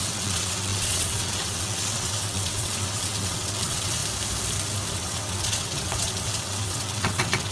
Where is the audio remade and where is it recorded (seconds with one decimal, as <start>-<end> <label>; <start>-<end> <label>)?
0.0-4.0 remade; 4.0-4.9 recorded; 4.9-7.5 remade